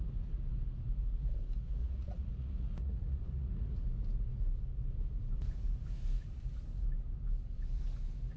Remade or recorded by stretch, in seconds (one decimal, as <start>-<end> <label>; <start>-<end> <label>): 0.0-1.8 recorded; 1.8-3.8 remade; 3.8-8.4 recorded